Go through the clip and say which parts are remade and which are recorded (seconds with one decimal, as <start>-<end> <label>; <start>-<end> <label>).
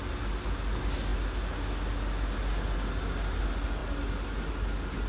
0.0-5.1 recorded